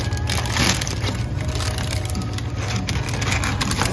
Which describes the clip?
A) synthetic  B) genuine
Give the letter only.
B